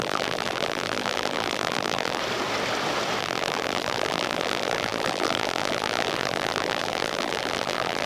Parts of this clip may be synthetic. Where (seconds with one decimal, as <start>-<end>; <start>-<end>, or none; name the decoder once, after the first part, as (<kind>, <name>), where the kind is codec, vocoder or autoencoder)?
0.0-2.2 (vocoder, BigVGAN v2); 3.2-8.1

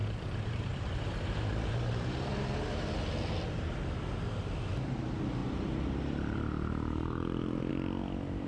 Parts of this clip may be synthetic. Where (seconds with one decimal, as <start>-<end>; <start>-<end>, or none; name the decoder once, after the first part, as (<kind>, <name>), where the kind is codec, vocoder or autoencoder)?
0.0-2.9 (vocoder, BigVGAN v2); 5.4-7.7